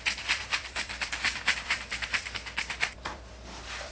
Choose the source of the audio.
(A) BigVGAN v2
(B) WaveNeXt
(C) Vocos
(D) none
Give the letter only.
A